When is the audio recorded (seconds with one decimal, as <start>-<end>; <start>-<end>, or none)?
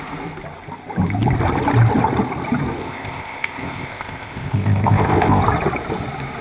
0.0-2.8; 5.4-6.4